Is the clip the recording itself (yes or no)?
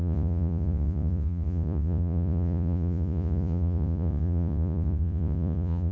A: no